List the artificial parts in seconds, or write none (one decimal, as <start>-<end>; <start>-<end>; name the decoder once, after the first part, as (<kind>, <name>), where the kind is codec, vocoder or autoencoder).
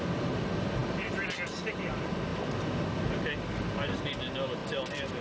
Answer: none